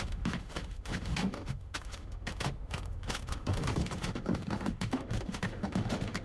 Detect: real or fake fake